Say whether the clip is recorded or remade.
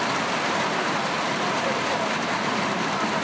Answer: recorded